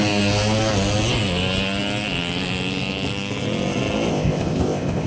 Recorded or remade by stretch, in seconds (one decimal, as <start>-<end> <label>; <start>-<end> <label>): 0.0-4.1 recorded; 4.1-5.1 remade